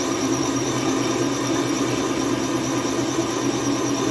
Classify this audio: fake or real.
real